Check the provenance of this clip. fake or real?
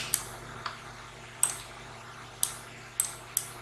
real